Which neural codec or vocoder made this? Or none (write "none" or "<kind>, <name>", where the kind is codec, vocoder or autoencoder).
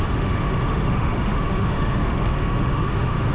autoencoder, DAC-VAE